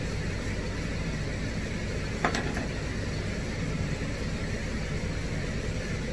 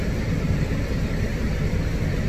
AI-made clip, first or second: second